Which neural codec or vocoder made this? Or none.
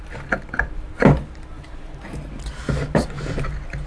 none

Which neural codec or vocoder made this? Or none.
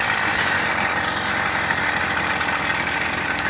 none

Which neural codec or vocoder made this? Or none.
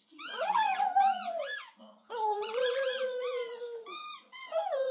vocoder, Vocos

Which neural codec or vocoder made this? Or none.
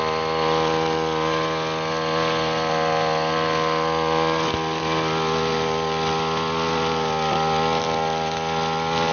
none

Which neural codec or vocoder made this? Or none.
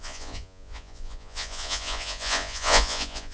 vocoder, Vocos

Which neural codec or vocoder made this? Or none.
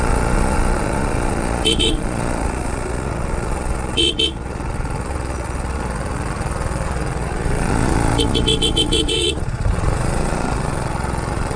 vocoder, Vocos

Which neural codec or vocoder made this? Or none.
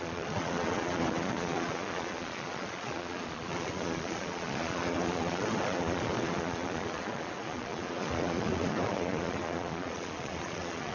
vocoder, Vocos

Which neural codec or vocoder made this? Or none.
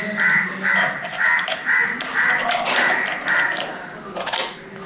none